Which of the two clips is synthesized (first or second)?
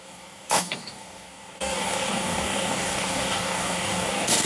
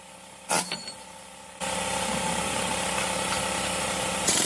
first